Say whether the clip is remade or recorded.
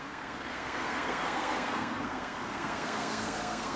remade